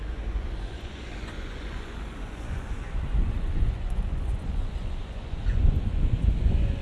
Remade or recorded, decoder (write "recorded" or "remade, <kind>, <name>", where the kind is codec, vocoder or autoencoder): remade, vocoder, Vocos